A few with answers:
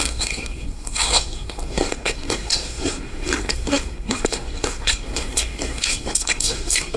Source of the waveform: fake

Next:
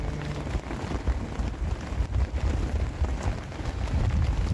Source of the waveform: real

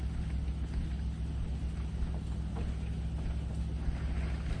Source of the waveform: real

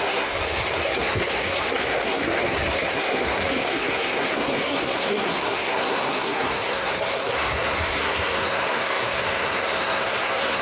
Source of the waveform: fake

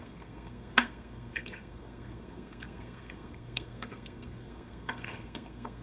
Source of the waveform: fake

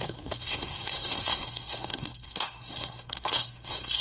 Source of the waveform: fake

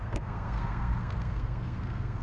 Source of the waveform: fake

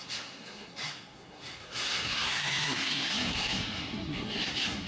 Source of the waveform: fake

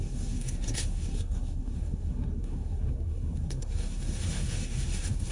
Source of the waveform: fake